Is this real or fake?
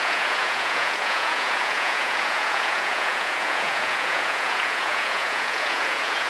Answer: fake